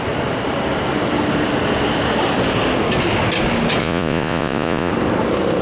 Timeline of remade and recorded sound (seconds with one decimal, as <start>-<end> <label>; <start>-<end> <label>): 0.0-3.8 recorded; 3.8-4.9 remade; 4.9-5.6 recorded